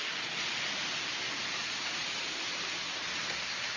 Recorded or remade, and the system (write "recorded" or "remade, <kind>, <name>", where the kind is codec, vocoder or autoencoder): recorded